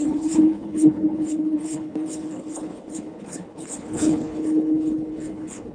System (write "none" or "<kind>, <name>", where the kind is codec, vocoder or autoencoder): codec, HILCodec